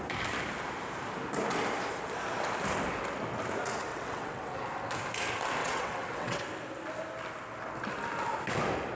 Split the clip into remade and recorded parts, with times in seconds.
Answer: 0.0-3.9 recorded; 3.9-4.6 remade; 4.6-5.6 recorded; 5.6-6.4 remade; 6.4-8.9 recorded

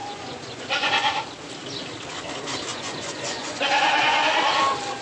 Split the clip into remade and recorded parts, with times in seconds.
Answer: 0.0-1.2 remade; 1.2-2.7 recorded; 2.7-4.4 remade; 4.4-5.0 recorded